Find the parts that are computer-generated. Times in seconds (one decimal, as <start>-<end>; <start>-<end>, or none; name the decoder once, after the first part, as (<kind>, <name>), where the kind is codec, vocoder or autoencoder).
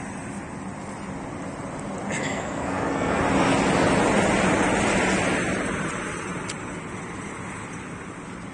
2.2-3.2 (codec, SNAC)